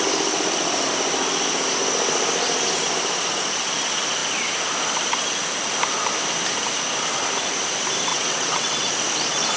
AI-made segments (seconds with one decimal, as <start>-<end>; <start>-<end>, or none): 8.1-8.7